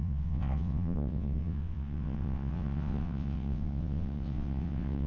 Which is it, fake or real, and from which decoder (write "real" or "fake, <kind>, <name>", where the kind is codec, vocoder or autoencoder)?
fake, vocoder, WaveNeXt